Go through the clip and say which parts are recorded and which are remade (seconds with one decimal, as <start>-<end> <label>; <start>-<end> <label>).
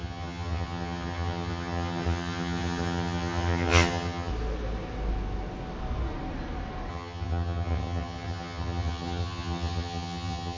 0.0-4.3 remade; 4.3-6.9 recorded; 6.9-10.6 remade